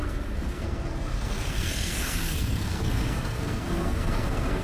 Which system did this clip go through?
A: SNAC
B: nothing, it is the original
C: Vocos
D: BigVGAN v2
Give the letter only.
A